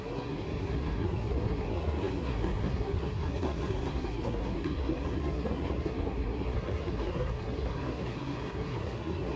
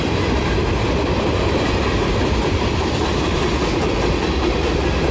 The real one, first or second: second